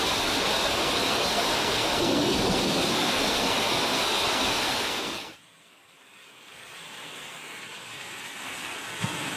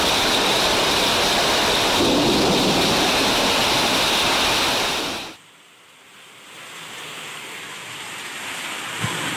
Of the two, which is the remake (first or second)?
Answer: first